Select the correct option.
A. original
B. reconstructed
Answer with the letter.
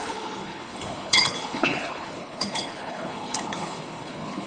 B